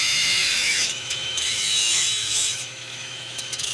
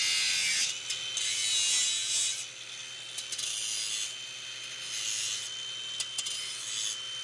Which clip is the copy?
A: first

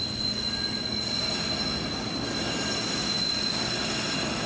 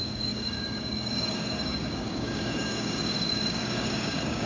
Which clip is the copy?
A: second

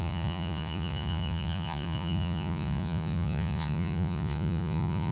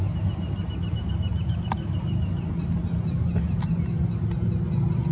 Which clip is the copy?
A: first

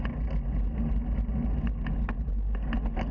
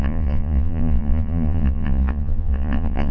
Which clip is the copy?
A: second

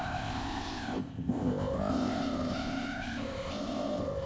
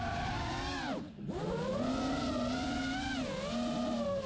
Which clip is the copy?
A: first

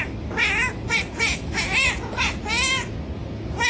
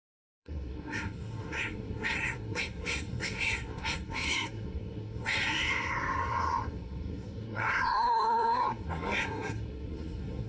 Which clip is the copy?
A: second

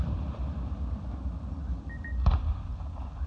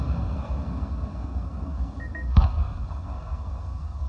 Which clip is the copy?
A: second